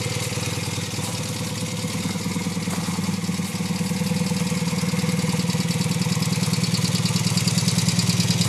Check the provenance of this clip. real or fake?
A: real